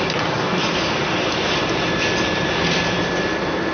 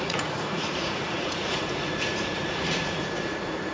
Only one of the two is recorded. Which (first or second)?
first